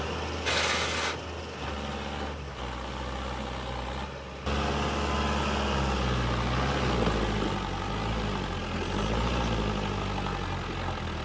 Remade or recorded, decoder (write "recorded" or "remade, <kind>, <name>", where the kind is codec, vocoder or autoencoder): recorded